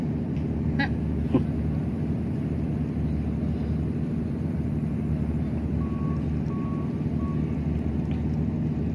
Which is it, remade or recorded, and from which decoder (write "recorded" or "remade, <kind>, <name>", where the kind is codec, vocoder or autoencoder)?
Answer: recorded